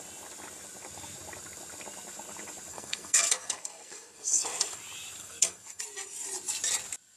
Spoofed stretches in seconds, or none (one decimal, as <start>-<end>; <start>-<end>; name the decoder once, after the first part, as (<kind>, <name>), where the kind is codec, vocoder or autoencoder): 2.7-4.8 (codec, SNAC); 5.2-5.8